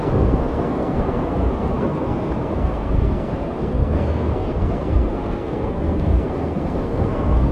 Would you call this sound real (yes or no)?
no